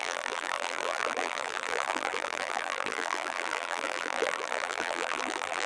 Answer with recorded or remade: remade